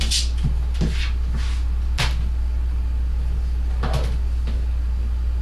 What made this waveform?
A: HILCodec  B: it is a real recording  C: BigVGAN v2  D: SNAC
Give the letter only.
B